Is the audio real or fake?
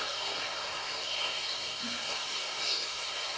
fake